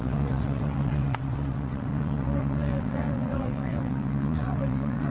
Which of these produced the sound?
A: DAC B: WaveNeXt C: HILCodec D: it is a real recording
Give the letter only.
B